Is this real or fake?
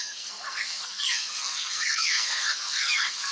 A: fake